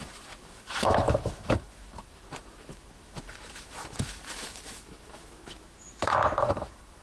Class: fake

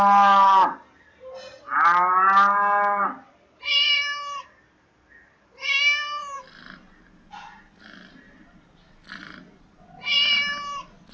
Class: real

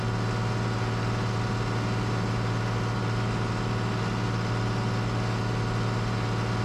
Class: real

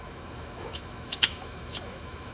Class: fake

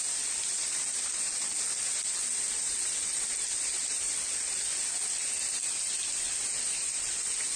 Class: real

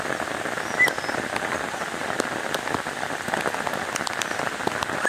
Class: real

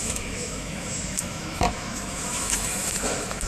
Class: fake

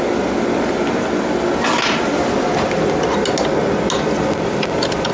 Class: real